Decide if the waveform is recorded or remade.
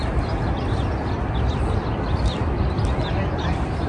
recorded